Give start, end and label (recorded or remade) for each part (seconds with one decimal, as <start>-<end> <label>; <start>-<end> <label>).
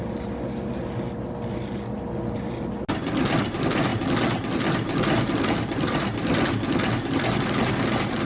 0.0-8.2 recorded